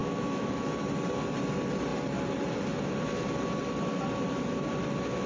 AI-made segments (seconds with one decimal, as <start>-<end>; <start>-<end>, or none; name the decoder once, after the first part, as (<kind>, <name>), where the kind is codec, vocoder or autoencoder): 0.0-0.9 (autoencoder, DAC-VAE)